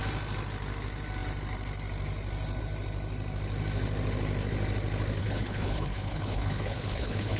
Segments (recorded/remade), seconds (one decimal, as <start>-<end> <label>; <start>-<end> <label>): 0.0-5.2 recorded; 5.2-7.4 remade